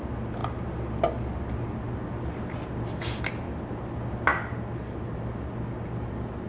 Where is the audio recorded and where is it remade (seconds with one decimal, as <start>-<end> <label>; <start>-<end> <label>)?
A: 0.0-6.5 recorded